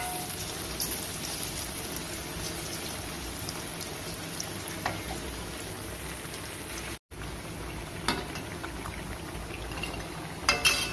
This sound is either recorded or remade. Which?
recorded